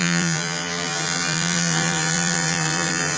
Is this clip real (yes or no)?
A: no